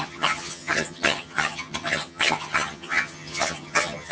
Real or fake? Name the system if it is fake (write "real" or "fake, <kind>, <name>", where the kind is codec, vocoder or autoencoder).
fake, vocoder, HiFi-GAN